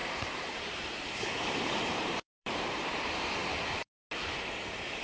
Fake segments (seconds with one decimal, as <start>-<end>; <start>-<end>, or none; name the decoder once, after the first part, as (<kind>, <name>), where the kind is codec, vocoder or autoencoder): 0.0-3.0 (vocoder, BigVGAN v2)